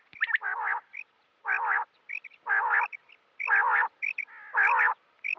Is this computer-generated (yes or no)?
yes